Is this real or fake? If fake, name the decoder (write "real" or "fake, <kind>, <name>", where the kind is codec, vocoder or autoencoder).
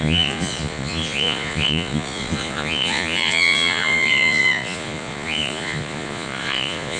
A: fake, vocoder, Vocos